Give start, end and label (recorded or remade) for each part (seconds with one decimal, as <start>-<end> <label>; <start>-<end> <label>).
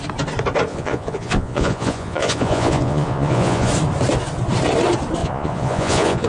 0.0-0.7 recorded; 0.7-3.7 remade; 3.7-5.2 recorded; 5.2-6.3 remade